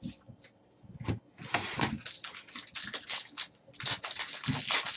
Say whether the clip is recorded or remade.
recorded